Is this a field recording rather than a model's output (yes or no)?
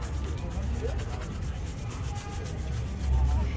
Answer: yes